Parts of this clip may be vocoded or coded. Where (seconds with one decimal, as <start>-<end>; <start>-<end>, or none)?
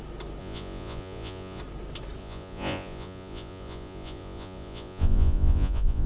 0.4-1.6; 2.2-6.1